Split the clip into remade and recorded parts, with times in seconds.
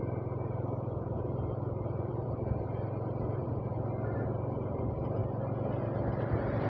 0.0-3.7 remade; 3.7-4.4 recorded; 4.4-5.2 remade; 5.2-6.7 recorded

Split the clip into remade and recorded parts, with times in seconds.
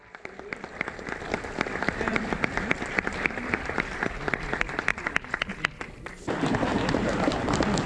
0.0-7.9 remade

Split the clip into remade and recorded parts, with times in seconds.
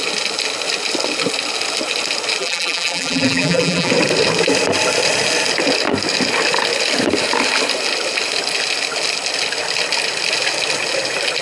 0.0-2.4 recorded; 2.4-3.9 remade; 3.9-11.4 recorded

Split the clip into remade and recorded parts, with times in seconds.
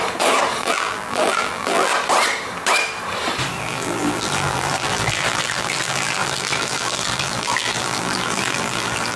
0.0-0.6 recorded; 0.6-1.9 remade; 1.9-3.6 recorded; 3.6-9.2 remade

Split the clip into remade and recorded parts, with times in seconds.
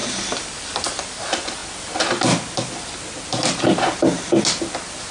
0.0-1.2 remade; 1.2-5.1 recorded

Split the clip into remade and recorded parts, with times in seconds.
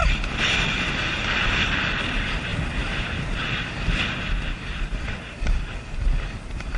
0.0-2.5 remade; 2.5-4.7 recorded; 4.7-6.8 remade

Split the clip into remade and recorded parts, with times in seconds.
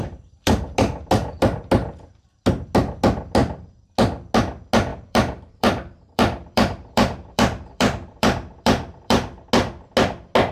0.0-0.6 remade; 0.6-3.4 recorded; 3.4-3.9 remade; 3.9-4.9 recorded; 4.9-9.5 remade; 9.5-10.5 recorded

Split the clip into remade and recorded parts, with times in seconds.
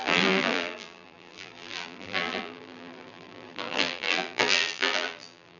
0.0-5.6 remade